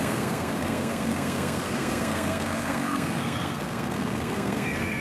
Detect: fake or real fake